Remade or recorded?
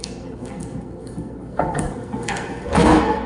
remade